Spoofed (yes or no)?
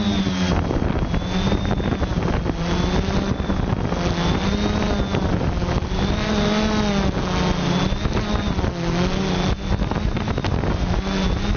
no